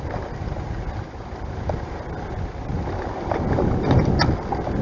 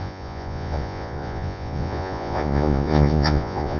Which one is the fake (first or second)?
second